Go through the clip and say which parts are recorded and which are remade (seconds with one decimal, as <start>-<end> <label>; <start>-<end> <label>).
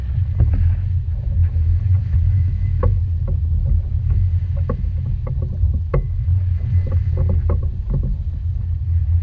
0.0-2.0 recorded; 2.0-3.0 remade; 3.0-9.2 recorded